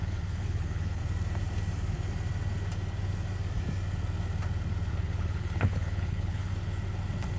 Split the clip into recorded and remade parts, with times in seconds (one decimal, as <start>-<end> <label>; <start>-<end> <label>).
0.0-1.0 remade; 1.0-4.9 recorded; 4.9-6.5 remade; 6.5-7.4 recorded